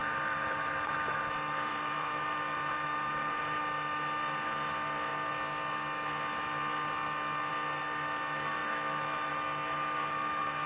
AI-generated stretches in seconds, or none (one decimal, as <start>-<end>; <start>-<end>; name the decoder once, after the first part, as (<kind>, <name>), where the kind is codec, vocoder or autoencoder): 0.0-1.2 (vocoder, BigVGAN v2); 1.7-3.6